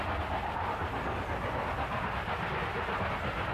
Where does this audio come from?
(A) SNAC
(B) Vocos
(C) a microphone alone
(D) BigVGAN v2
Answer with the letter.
C